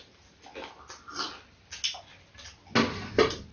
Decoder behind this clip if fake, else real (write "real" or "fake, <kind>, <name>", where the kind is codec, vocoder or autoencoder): real